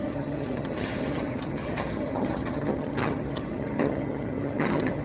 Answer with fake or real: fake